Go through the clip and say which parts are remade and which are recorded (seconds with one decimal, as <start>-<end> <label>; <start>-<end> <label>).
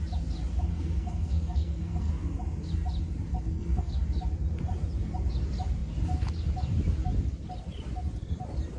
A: 0.0-0.7 recorded; 0.7-2.1 remade; 2.1-3.3 recorded; 3.3-3.9 remade; 3.9-8.8 recorded